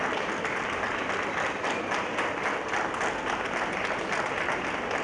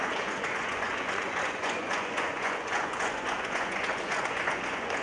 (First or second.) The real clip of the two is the first